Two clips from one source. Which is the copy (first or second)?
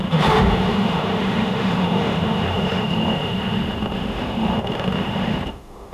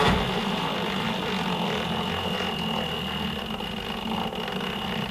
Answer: first